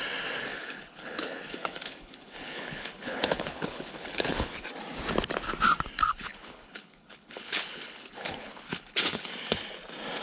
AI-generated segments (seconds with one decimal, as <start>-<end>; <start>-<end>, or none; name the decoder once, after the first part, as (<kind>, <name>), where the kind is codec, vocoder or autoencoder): 0.5-4.6 (codec, HILCodec); 6.1-9.3